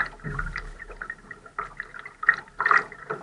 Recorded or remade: recorded